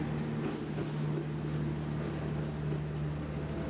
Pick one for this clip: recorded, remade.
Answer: recorded